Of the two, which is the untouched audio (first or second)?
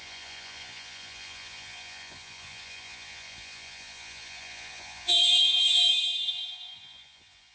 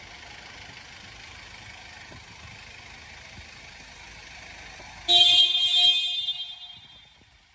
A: second